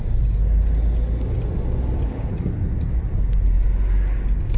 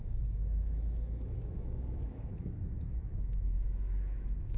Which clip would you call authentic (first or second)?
first